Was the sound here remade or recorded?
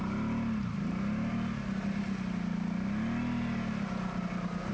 recorded